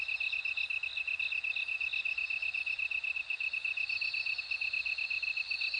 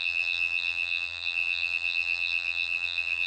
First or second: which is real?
first